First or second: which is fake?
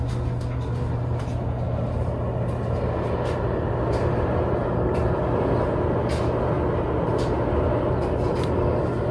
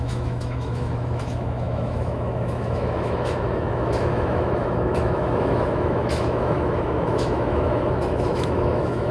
second